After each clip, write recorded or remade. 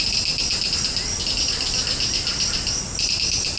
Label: recorded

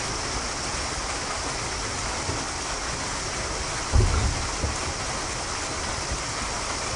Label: recorded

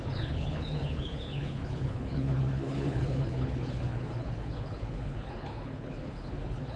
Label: remade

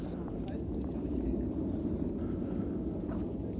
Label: recorded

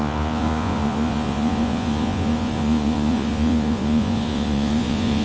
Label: remade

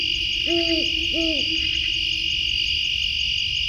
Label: recorded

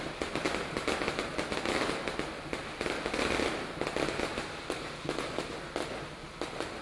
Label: recorded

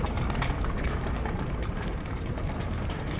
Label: remade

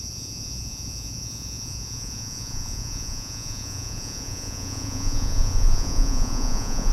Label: remade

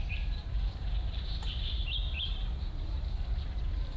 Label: remade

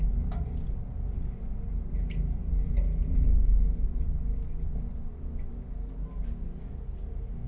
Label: recorded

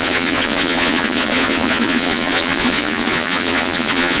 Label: remade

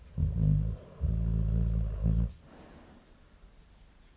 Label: recorded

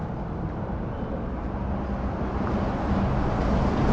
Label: recorded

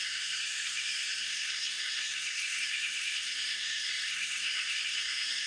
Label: remade